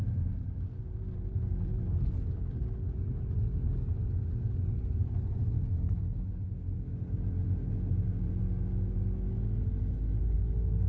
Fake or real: real